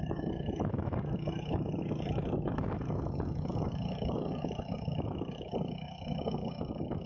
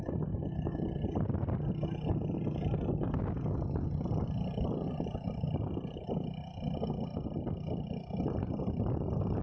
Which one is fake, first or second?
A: first